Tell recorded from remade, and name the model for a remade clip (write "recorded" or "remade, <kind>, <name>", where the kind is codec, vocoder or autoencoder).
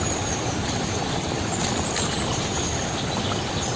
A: recorded